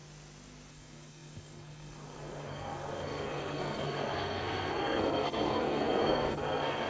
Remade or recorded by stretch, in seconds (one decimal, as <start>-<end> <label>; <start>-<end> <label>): 0.0-0.7 recorded; 0.7-6.9 remade